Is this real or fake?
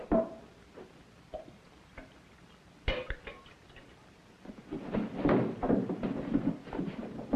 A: fake